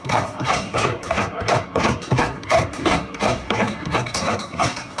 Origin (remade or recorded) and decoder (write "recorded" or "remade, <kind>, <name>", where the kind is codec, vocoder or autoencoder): remade, codec, SNAC